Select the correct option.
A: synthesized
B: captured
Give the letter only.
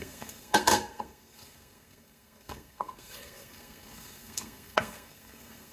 A